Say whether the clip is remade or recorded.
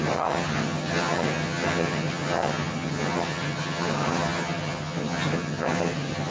remade